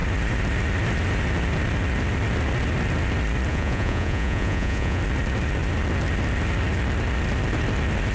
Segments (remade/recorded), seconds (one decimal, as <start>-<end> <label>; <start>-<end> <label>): 0.0-3.5 recorded; 3.5-5.0 remade; 5.0-8.1 recorded